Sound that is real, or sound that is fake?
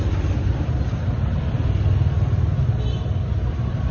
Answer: real